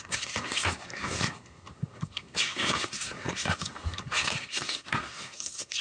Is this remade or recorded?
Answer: remade